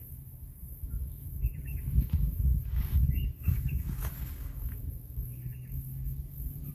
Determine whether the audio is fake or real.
fake